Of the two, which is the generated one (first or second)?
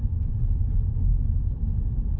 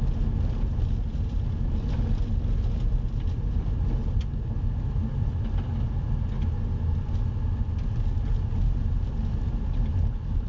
first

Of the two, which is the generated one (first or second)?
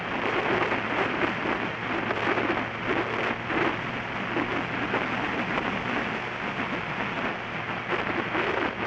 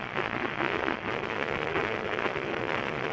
second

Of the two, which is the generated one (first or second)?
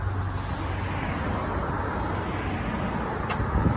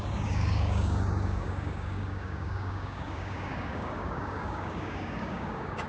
second